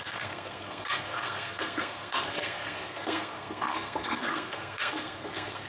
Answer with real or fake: fake